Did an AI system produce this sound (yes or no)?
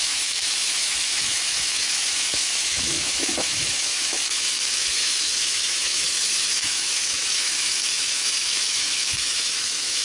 yes